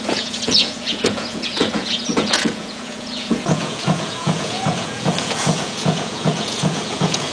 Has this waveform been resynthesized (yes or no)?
yes